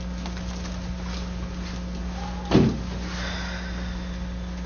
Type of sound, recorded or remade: recorded